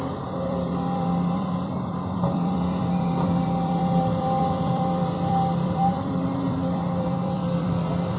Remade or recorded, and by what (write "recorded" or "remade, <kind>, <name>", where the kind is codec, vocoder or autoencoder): remade, vocoder, BigVGAN v2